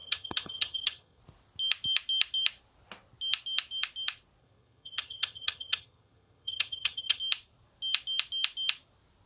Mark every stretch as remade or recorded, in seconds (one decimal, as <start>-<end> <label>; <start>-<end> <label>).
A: 0.0-1.2 remade; 1.2-4.4 recorded; 4.4-7.2 remade; 7.2-9.3 recorded